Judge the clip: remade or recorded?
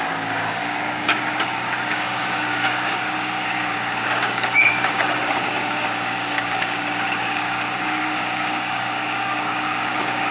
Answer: remade